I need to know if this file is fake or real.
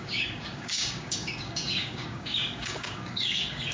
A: fake